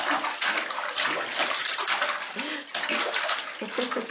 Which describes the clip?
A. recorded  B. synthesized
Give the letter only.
A